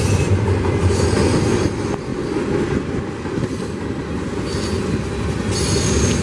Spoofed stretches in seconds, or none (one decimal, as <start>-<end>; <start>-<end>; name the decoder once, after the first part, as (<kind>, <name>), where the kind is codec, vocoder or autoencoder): none